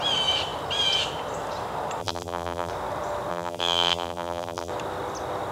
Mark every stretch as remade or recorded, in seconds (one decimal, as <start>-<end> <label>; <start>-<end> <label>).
0.0-2.0 recorded; 2.0-2.7 remade; 2.7-3.3 recorded; 3.3-4.7 remade; 4.7-5.5 recorded